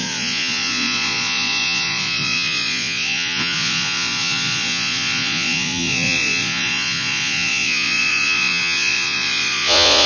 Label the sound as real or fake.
fake